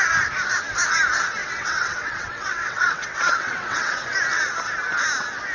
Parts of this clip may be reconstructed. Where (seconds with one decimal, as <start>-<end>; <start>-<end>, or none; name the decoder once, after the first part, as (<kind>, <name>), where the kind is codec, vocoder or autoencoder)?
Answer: 1.4-3.9 (vocoder, WaveNeXt)